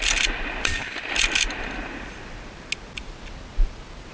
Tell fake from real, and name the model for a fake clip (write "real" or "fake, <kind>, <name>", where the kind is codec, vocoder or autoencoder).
real